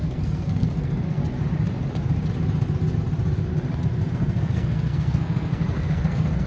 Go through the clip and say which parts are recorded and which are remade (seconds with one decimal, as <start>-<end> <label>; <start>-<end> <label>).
0.0-1.2 remade; 1.2-4.1 recorded; 4.1-6.5 remade